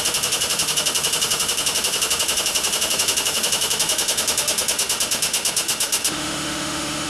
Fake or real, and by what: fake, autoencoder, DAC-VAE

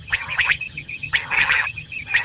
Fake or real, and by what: fake, vocoder, HiFi-GAN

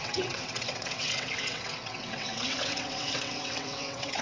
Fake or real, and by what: fake, vocoder, WaveNeXt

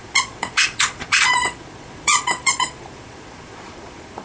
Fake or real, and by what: fake, vocoder, Vocos